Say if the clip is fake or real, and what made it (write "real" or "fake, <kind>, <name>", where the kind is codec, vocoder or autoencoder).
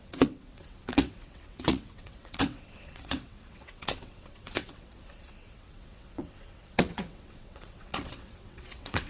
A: fake, vocoder, WaveNeXt